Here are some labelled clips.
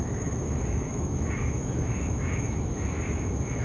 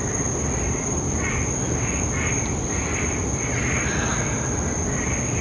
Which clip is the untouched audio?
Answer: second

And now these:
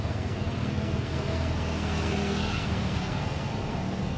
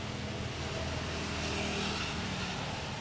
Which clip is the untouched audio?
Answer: second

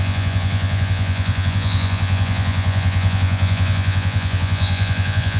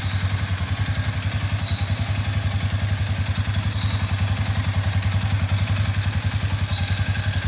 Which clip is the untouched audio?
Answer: second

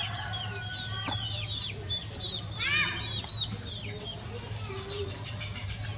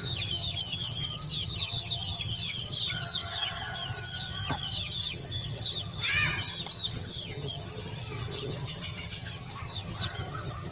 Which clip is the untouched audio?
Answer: first